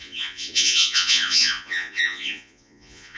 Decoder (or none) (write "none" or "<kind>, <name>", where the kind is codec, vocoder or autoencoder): vocoder, Vocos